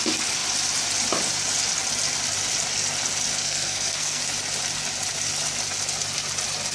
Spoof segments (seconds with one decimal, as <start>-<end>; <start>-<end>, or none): 3.3-4.2

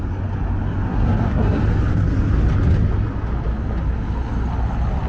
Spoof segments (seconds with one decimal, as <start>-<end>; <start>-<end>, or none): 0.9-1.6